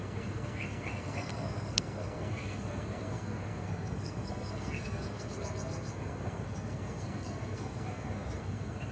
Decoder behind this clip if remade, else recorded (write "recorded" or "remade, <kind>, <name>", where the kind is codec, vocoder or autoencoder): remade, codec, SNAC